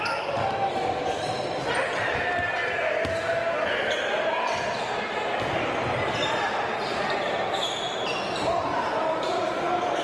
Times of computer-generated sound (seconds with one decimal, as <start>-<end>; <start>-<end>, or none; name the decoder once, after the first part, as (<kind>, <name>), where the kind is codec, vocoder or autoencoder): 0.0-2.6 (vocoder, BigVGAN v2); 3.8-10.0